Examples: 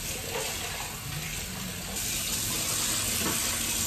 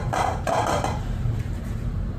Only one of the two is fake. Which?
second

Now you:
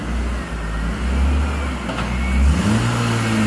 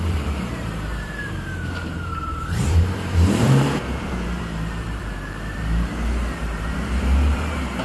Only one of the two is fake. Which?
second